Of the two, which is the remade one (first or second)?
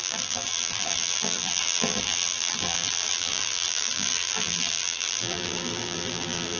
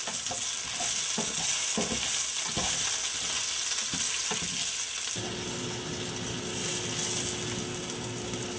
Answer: first